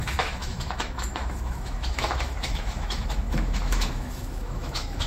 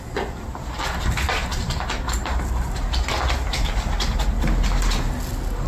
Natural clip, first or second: second